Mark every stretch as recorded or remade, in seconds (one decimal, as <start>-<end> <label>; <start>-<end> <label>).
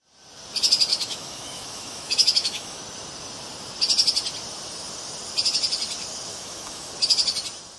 0.0-0.9 recorded; 0.9-2.8 remade; 2.8-6.3 recorded; 6.3-6.9 remade; 6.9-7.8 recorded